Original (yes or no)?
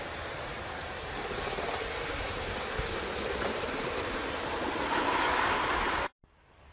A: yes